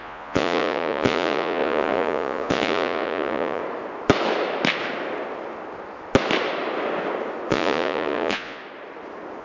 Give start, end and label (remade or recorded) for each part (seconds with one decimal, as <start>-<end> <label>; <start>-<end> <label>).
0.0-3.6 remade; 3.6-7.5 recorded; 7.5-8.6 remade; 8.6-9.4 recorded